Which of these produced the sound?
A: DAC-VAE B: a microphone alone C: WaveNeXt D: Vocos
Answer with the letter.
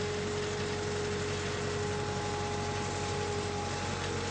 B